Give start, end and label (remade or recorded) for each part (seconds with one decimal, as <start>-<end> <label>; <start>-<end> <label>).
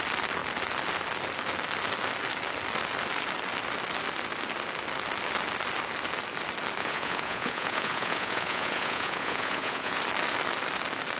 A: 0.0-6.8 recorded; 6.8-10.0 remade; 10.0-11.2 recorded